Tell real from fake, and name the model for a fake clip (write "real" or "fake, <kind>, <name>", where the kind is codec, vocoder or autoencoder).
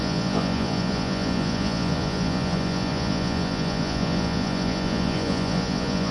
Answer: fake, vocoder, Vocos